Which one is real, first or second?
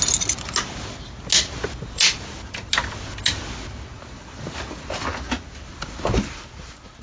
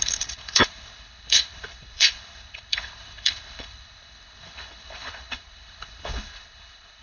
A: first